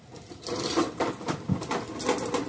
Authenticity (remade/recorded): remade